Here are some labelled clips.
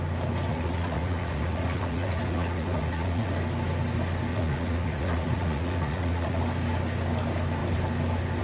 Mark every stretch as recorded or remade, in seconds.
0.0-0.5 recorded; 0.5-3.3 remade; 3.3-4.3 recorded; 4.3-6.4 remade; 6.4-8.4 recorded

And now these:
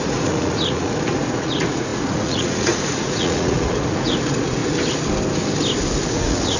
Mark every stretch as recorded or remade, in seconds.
0.0-4.6 remade; 4.6-6.1 recorded; 6.1-6.6 remade

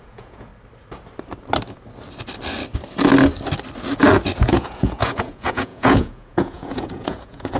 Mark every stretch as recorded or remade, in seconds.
0.0-0.5 remade; 0.5-4.4 recorded; 4.4-7.6 remade

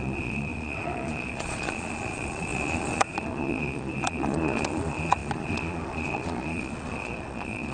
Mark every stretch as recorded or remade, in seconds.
0.0-7.7 remade

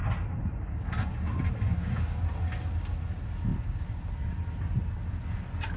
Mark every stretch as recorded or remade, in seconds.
0.0-5.8 recorded